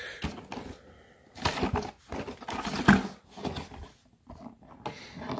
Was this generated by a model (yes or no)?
no